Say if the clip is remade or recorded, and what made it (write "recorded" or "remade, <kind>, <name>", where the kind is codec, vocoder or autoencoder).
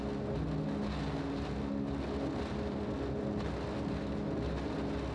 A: recorded